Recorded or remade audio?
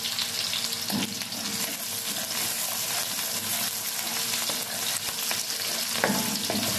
recorded